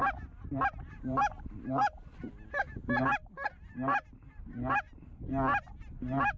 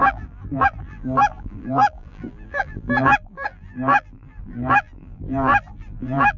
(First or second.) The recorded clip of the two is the first